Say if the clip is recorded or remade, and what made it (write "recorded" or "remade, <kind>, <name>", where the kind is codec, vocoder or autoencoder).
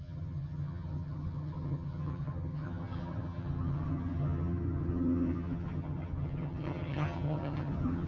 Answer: remade, vocoder, HiFi-GAN